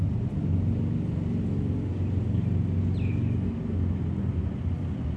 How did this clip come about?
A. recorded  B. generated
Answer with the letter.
A